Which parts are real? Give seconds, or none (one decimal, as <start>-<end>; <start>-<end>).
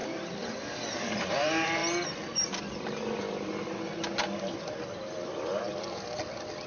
0.0-0.9; 1.8-5.8